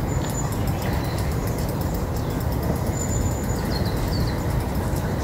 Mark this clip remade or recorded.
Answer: recorded